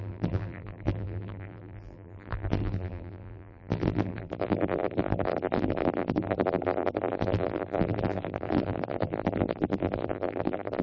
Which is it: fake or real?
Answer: fake